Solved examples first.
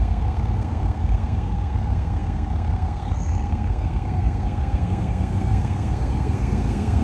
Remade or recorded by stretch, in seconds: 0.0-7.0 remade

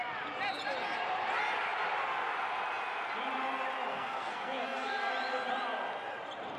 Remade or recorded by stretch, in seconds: 0.0-3.9 recorded; 3.9-5.1 remade; 5.1-6.6 recorded

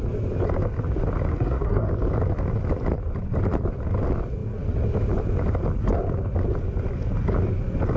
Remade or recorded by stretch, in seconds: 0.0-1.3 recorded; 1.3-1.9 remade; 1.9-8.0 recorded